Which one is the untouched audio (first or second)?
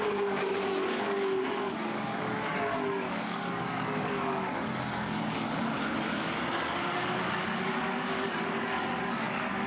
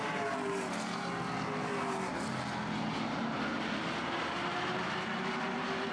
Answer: second